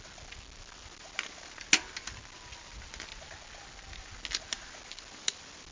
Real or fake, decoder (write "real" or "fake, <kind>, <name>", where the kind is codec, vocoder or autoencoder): real